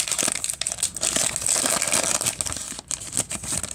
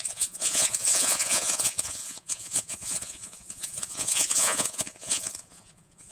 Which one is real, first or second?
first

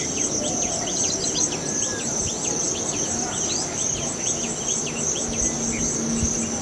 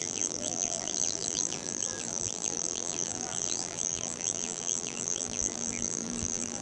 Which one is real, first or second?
first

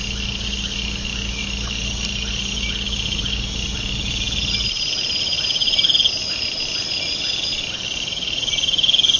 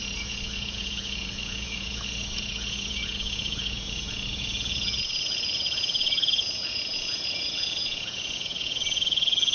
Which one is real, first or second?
first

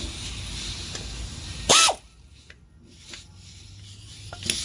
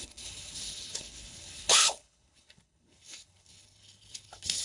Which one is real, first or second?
first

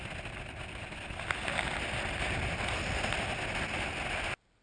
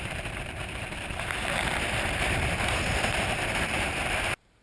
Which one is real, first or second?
first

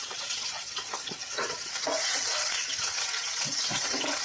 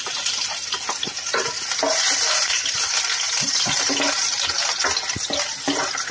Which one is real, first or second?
second